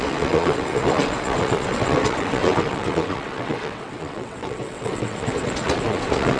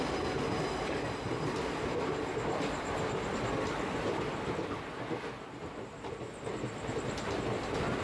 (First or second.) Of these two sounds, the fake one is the first